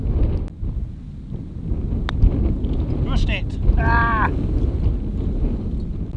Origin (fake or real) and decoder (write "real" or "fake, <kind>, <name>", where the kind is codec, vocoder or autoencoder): real